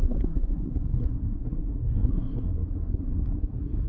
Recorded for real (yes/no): no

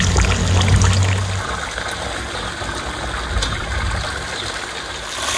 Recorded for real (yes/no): yes